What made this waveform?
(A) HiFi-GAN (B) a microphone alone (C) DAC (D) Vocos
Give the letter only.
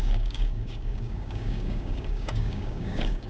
C